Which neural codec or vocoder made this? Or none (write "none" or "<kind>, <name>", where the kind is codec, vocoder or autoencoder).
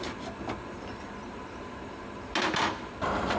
none